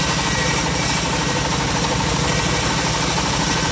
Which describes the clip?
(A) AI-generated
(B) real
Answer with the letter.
A